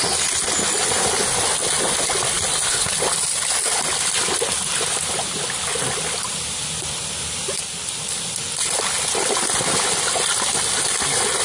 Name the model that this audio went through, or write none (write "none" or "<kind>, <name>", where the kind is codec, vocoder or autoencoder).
none